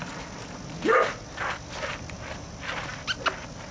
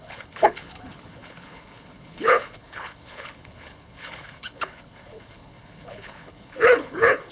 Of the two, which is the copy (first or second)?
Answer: second